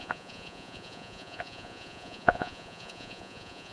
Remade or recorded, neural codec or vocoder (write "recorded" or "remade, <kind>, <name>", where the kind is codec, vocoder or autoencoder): remade, vocoder, Vocos